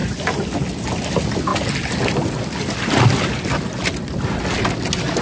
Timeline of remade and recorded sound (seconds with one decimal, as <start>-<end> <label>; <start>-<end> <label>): 0.0-5.2 recorded